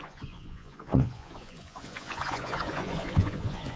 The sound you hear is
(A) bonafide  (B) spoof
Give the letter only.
B